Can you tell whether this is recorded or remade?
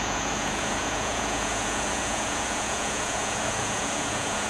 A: remade